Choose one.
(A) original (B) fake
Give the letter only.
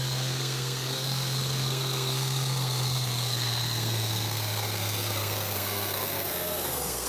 B